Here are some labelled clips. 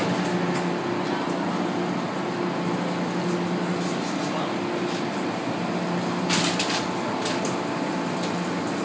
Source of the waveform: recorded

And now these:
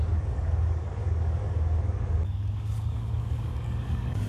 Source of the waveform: remade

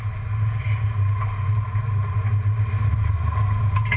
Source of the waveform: recorded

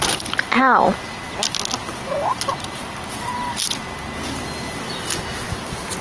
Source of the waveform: recorded